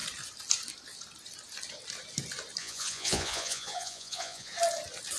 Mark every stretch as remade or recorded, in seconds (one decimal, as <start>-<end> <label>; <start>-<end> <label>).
0.0-2.6 recorded; 2.6-4.5 remade; 4.5-5.2 recorded